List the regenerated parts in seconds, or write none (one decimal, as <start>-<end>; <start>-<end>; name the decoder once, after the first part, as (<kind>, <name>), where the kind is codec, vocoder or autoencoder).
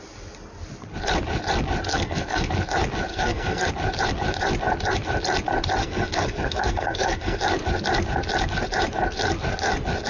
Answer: 1.9-2.5 (codec, SNAC); 3.1-3.7; 5.8-7.4